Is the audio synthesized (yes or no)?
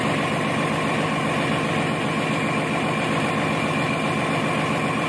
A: no